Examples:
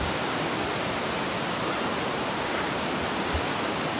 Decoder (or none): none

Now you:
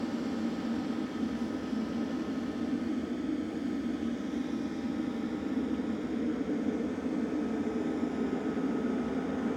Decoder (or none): none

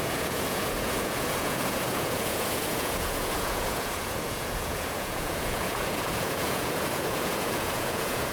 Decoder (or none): vocoder, Vocos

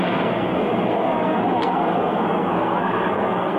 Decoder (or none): codec, SNAC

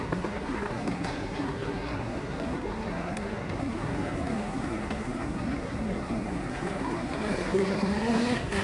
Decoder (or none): codec, SNAC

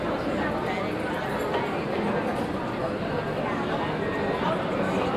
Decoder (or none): none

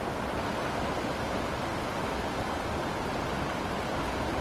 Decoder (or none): none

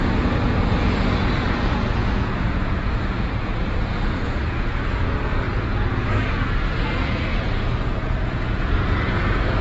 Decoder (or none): vocoder, Vocos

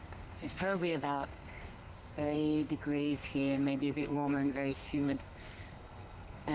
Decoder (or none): codec, SNAC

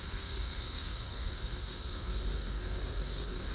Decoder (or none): codec, SNAC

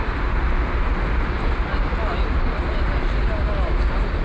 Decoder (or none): none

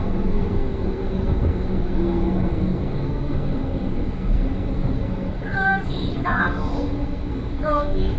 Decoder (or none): codec, SNAC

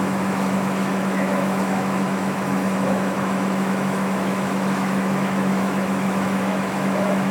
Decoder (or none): autoencoder, DAC-VAE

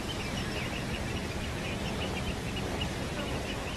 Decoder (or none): vocoder, BigVGAN v2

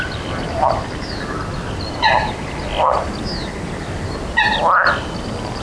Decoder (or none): none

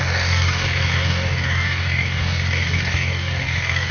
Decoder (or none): codec, DAC